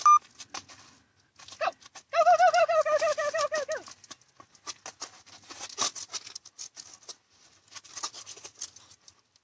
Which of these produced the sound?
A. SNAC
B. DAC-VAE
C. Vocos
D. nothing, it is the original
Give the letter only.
D